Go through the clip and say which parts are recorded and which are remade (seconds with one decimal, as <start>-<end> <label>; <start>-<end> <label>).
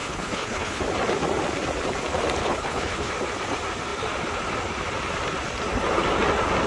0.0-0.8 remade; 0.8-2.4 recorded; 2.4-3.1 remade; 3.1-6.7 recorded